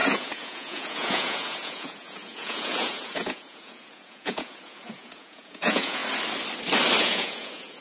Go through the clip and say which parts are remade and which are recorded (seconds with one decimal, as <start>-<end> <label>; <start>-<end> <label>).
0.0-6.0 remade; 6.0-7.0 recorded; 7.0-7.8 remade